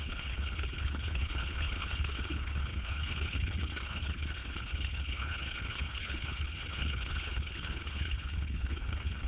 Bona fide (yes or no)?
no